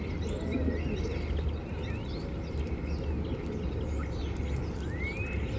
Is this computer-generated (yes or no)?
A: no